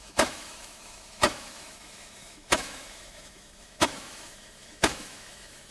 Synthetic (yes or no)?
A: yes